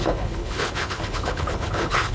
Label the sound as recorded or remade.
remade